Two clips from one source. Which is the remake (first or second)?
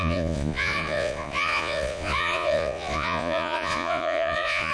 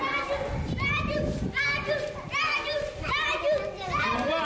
first